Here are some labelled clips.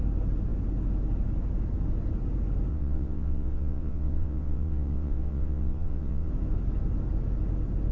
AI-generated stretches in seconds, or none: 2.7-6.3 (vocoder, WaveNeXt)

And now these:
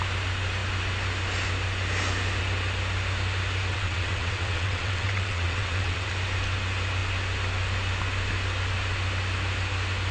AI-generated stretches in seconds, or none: 3.7-6.1 (vocoder, WaveNeXt)

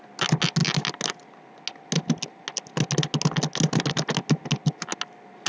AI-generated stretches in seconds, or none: none

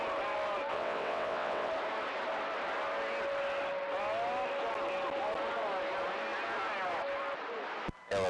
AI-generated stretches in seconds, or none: 0.7-1.7 (vocoder, WaveNeXt)

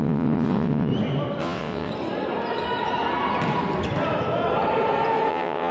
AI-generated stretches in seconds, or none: 0.0-0.9 (vocoder, WaveNeXt); 1.4-1.9; 5.3-5.7